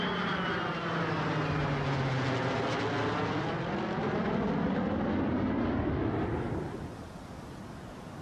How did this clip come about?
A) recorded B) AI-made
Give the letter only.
A